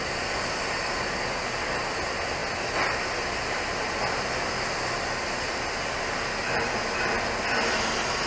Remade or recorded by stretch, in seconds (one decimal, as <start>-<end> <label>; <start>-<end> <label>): 0.0-8.3 recorded